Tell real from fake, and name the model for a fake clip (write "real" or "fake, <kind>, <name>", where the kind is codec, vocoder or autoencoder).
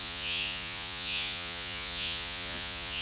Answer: fake, vocoder, Vocos